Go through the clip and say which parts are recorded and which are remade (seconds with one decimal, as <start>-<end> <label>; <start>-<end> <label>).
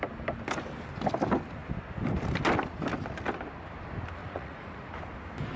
0.0-4.2 recorded; 4.2-4.9 remade; 4.9-5.6 recorded